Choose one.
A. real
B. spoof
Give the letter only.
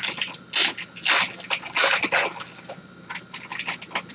A